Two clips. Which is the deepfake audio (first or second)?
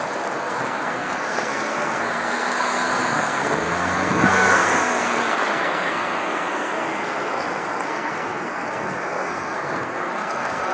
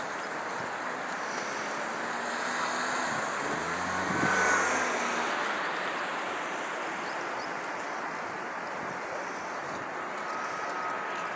first